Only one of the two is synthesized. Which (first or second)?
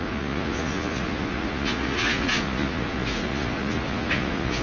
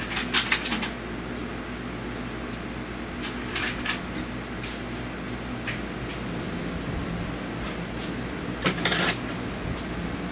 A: first